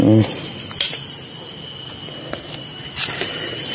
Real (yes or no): yes